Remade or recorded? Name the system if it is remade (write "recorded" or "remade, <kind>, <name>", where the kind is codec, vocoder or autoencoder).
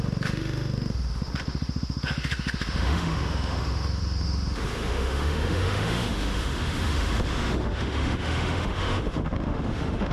remade, autoencoder, DAC-VAE